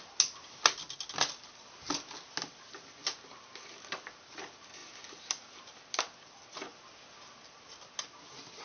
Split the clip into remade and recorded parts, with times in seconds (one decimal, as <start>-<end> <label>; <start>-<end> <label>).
0.0-8.6 recorded